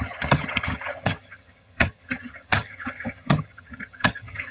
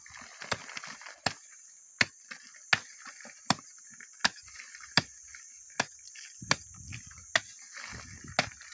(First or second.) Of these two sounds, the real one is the second